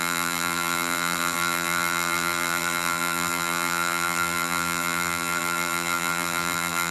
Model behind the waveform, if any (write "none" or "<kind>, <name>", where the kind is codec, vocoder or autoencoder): vocoder, BigVGAN v2